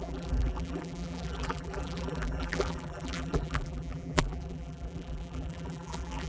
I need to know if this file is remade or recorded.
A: remade